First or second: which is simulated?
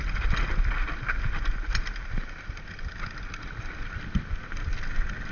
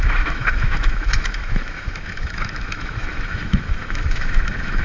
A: second